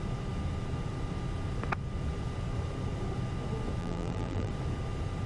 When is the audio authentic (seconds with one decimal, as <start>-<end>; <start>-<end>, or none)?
0.0-3.8; 4.5-5.3